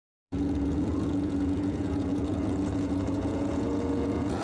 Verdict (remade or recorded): remade